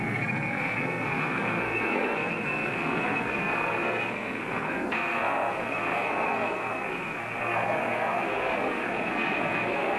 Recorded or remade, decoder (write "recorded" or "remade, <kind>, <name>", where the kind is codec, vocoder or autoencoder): remade, codec, SNAC